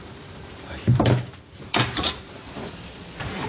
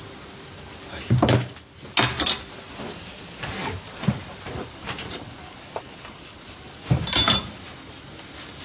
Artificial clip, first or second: first